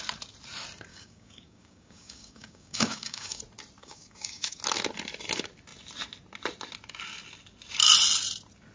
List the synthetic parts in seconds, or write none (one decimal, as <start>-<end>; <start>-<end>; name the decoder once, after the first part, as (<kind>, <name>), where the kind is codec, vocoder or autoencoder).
0.9-3.4 (codec, DAC); 3.8-4.6